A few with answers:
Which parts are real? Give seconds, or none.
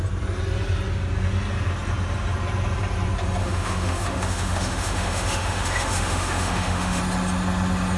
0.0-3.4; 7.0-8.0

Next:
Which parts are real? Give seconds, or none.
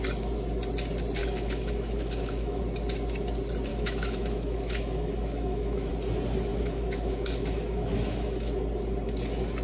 0.0-1.2; 2.6-3.7; 5.9-6.5; 8.6-9.6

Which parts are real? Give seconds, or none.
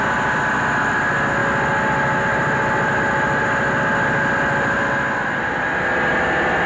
0.0-6.7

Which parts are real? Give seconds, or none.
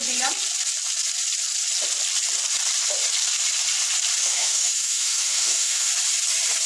0.0-4.2; 5.9-6.7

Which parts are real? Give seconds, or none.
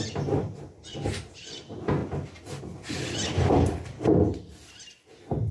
0.0-5.5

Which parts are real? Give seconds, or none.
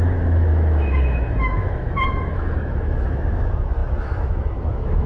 none